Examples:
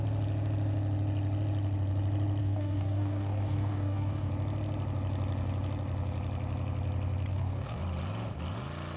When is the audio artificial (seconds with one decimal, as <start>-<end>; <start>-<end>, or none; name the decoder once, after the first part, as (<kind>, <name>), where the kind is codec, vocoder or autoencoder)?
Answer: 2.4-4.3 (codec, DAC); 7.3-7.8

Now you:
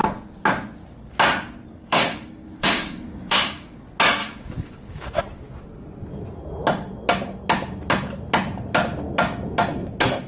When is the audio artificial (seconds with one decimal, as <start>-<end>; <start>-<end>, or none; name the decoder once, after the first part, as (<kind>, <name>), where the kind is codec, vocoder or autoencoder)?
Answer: 1.8-3.7 (codec, DAC); 4.2-5.2

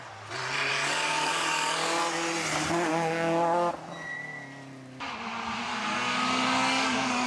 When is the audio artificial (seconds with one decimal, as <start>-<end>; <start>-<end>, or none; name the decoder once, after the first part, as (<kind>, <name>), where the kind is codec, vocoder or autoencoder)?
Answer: 0.7-2.0 (codec, DAC); 2.9-3.7; 5.7-7.3